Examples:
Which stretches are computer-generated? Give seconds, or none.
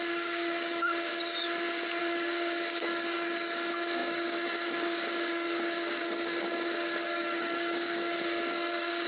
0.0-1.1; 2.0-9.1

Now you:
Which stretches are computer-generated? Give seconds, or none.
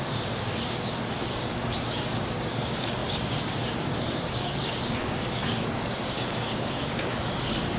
0.0-7.8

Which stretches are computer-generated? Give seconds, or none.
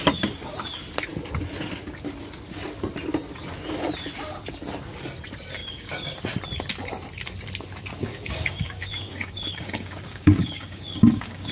5.6-6.2; 8.0-11.5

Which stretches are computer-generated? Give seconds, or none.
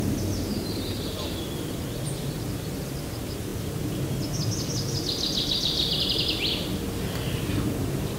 none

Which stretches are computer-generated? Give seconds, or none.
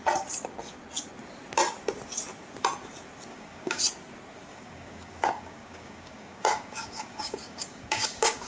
3.3-3.8; 4.5-8.5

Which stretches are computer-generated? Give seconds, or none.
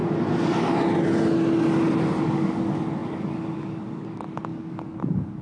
2.2-5.4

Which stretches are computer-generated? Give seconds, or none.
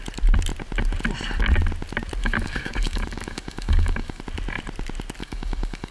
2.2-4.2; 5.2-5.9